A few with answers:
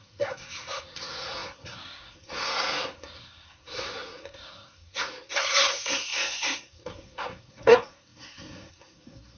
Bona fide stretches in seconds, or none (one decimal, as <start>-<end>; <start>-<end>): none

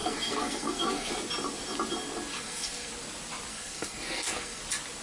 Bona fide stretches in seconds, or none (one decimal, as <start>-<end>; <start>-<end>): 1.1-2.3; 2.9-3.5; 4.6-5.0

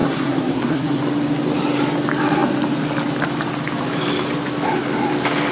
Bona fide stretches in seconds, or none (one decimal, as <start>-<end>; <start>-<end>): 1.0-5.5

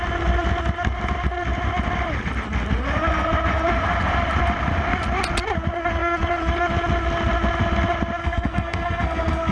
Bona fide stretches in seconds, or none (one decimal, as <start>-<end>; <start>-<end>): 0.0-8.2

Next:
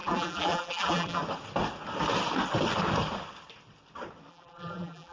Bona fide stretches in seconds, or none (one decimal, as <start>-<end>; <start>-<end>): 1.2-4.3

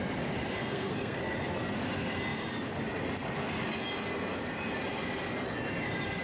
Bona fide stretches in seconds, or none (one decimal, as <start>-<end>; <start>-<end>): 0.0-0.6; 1.2-6.2

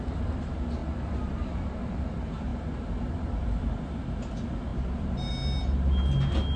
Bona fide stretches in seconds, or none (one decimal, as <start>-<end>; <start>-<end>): 0.0-0.8; 1.6-2.5; 4.0-4.7; 5.3-6.6